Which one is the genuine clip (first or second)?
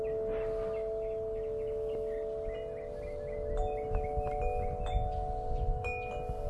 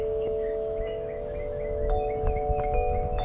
first